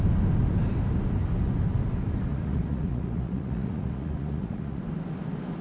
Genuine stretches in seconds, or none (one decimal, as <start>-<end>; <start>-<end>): 0.0-2.3; 4.8-5.6